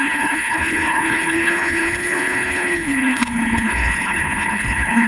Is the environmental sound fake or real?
fake